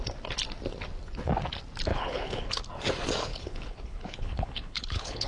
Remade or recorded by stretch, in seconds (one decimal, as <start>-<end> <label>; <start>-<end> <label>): 0.0-1.9 recorded; 1.9-2.6 remade; 2.6-3.3 recorded; 3.3-5.3 remade